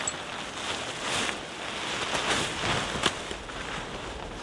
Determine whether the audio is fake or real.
real